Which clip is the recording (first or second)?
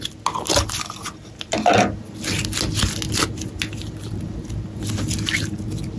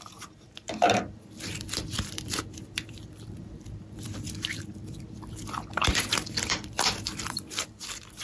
first